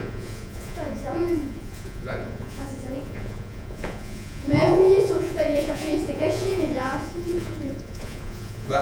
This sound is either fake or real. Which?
fake